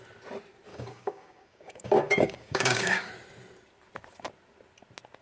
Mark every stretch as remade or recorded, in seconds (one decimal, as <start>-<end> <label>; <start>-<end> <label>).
0.0-0.7 recorded; 0.7-3.1 remade; 3.1-5.2 recorded